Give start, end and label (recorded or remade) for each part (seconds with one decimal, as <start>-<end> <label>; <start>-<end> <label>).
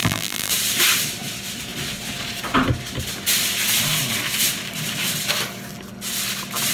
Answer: 0.0-0.5 remade; 0.5-6.7 recorded